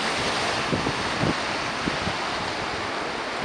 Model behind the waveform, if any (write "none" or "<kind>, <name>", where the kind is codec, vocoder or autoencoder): none